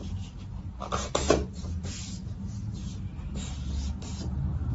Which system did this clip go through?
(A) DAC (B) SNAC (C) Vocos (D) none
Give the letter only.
D